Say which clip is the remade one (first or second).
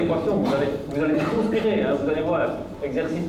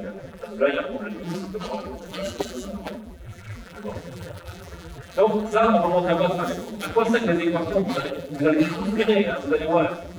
second